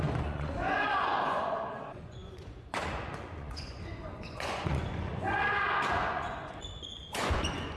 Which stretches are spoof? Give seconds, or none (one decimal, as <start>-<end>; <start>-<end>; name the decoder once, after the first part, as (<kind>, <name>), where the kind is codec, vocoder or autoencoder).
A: 0.0-7.8 (vocoder, Vocos)